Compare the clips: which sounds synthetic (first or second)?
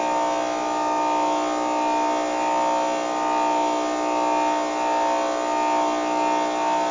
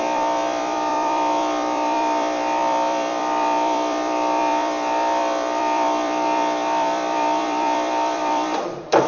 second